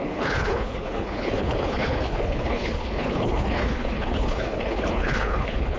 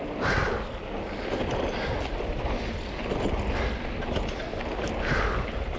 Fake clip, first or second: first